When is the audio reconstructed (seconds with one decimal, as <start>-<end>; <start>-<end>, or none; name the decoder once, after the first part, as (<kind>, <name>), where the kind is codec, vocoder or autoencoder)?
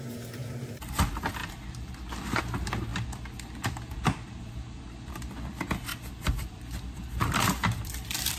1.4-2.4 (vocoder, BigVGAN v2); 2.9-5.1; 5.9-8.4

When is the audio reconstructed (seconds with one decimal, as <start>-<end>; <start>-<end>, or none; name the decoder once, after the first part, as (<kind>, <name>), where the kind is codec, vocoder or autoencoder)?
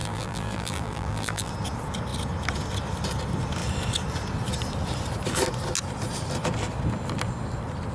0.0-1.5 (vocoder, BigVGAN v2)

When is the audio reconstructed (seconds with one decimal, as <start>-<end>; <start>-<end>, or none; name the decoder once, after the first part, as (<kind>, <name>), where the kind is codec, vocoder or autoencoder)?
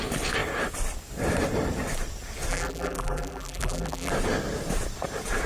2.5-4.1 (vocoder, BigVGAN v2)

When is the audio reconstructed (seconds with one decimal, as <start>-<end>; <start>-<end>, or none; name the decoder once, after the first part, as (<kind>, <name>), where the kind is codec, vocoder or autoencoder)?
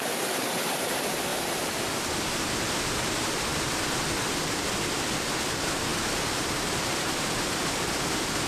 0.0-1.3 (vocoder, BigVGAN v2); 2.5-3.5; 5.5-8.5